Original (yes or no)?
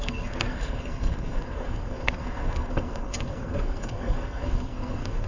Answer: no